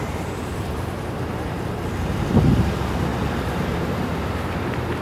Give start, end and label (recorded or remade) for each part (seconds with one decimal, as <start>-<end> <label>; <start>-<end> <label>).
0.0-5.0 remade